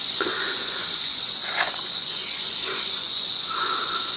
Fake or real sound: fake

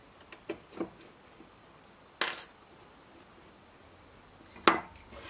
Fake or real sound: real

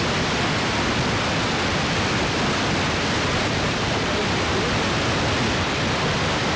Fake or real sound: real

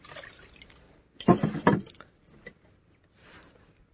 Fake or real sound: real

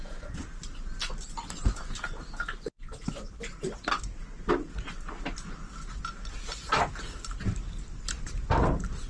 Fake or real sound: real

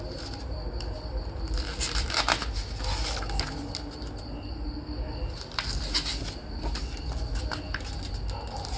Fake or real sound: real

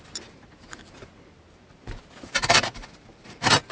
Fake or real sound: fake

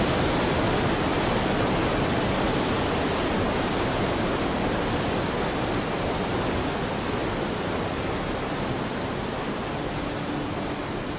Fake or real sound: real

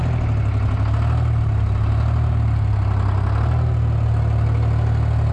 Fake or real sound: real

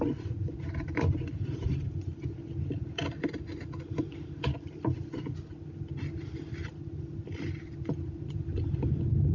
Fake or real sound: real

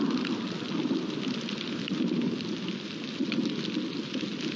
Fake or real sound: real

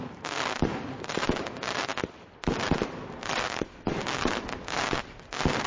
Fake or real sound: fake